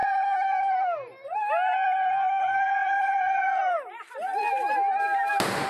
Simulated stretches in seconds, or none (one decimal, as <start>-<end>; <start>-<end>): 2.8-5.0